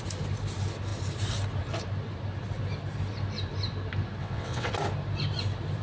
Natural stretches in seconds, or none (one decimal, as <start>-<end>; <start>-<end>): 0.0-4.2; 4.7-5.8